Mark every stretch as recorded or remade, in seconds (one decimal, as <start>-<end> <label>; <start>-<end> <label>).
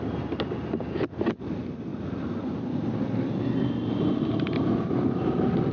0.0-5.7 recorded